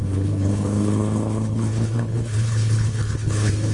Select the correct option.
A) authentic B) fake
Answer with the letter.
B